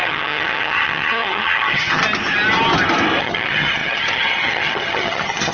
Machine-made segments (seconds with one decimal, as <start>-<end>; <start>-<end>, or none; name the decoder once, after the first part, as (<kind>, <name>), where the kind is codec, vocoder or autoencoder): 0.0-2.0 (vocoder, HiFi-GAN); 3.2-5.5